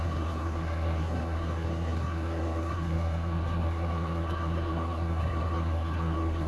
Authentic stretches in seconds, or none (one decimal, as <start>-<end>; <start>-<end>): none